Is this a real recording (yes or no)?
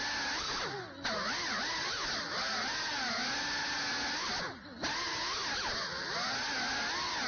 yes